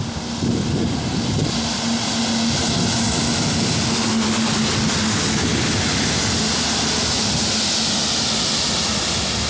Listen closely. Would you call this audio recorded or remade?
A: recorded